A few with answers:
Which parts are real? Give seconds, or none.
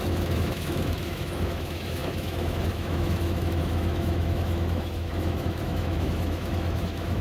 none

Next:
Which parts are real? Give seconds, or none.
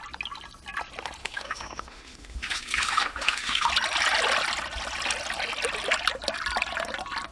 0.0-1.2; 3.7-7.3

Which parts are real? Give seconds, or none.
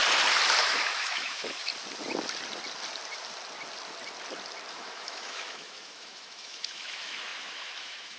0.0-0.6; 1.7-4.7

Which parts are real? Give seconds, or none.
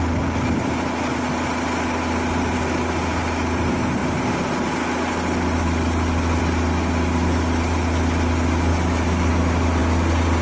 0.0-8.7; 9.3-10.4